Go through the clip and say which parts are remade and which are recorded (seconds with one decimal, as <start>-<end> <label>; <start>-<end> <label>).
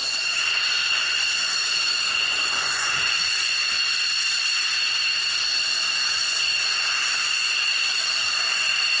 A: 0.0-3.8 remade; 3.8-5.6 recorded; 5.6-9.0 remade